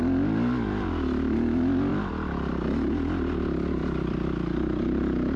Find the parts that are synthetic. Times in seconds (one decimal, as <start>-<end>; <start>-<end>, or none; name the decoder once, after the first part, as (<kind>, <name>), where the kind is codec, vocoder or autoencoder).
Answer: none